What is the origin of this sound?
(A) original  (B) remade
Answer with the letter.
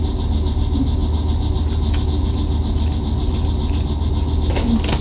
A